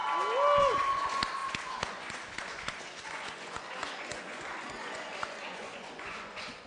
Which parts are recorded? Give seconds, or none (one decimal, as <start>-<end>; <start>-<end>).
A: 0.0-0.6